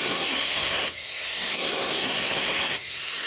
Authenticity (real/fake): fake